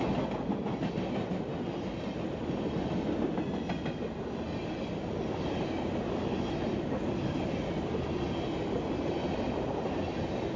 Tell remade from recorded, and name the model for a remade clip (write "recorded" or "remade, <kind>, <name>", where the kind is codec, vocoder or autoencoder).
recorded